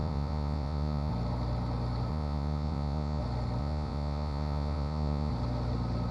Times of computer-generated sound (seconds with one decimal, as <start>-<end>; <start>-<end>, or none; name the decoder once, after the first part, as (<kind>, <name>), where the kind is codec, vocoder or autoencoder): 0.0-1.1 (vocoder, Vocos); 2.1-3.2; 3.6-5.3

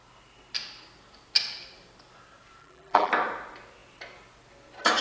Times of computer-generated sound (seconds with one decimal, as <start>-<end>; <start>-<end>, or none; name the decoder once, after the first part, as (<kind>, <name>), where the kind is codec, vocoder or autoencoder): 2.6-3.1 (vocoder, BigVGAN v2)

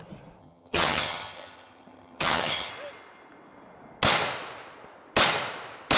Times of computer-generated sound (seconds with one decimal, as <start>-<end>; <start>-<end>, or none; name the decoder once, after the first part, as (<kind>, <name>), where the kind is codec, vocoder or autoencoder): 0.4-2.7 (vocoder, HiFi-GAN)

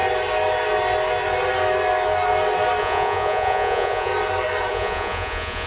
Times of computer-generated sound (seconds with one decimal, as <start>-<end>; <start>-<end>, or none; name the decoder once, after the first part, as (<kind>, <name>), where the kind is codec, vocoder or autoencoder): 2.8-4.1 (vocoder, Vocos); 4.7-5.7

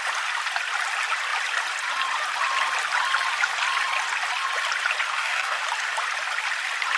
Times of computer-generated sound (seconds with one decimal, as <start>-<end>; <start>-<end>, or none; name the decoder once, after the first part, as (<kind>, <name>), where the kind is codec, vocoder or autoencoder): 5.1-5.6 (codec, DAC)

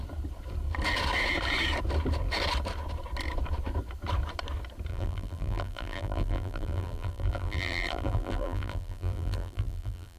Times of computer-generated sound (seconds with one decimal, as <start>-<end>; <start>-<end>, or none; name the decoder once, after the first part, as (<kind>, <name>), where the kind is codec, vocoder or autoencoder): 4.9-10.2 (vocoder, BigVGAN v2)

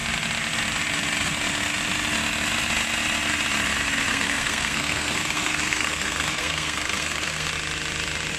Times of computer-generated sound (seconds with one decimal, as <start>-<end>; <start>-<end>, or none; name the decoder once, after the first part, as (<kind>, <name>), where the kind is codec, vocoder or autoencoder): 4.1-7.5 (codec, SNAC)

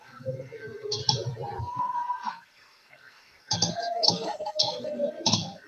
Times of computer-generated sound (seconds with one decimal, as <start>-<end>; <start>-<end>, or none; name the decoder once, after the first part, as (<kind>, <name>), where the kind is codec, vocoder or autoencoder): 0.0-1.0 (codec, SNAC); 1.6-5.7